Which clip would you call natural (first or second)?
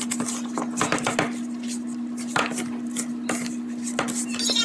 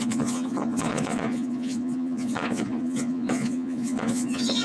first